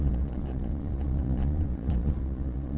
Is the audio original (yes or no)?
no